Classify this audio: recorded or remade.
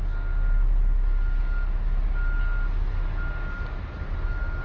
recorded